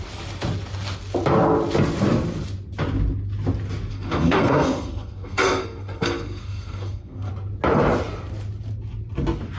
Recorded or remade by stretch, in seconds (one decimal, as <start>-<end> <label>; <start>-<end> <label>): 0.0-3.9 recorded; 3.9-7.3 remade; 7.3-9.6 recorded